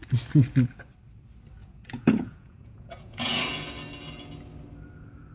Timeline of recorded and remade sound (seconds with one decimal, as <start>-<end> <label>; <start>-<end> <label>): 0.0-1.6 recorded; 1.6-3.4 remade; 3.4-5.3 recorded